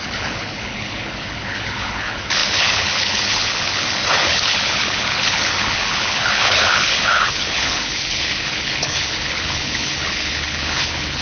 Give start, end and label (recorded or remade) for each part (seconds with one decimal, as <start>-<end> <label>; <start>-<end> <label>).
0.0-11.2 remade